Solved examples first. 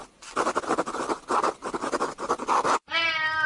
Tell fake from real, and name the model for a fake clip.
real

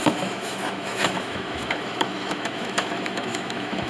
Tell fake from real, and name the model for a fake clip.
fake, autoencoder, DAC-VAE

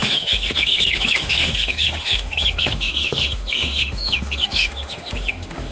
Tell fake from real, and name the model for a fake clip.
fake, autoencoder, DAC-VAE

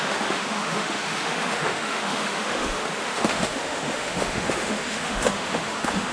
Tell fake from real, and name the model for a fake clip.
fake, autoencoder, DAC-VAE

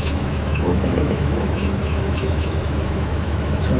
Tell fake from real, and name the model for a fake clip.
fake, autoencoder, DAC-VAE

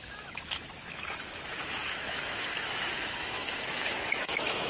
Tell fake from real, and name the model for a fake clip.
fake, autoencoder, DAC-VAE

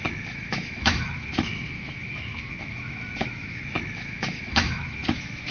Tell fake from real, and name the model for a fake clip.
fake, autoencoder, DAC-VAE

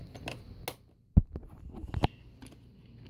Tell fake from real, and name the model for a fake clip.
real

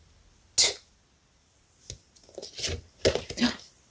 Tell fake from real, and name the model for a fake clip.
real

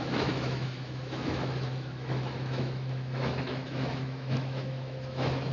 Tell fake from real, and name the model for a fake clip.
fake, autoencoder, DAC-VAE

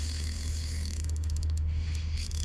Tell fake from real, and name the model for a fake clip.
fake, autoencoder, DAC-VAE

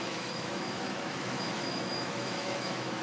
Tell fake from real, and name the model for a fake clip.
fake, autoencoder, DAC-VAE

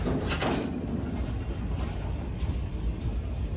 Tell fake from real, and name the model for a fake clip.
real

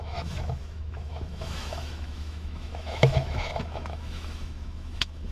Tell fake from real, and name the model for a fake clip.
fake, autoencoder, DAC-VAE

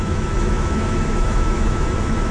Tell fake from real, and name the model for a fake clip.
fake, autoencoder, DAC-VAE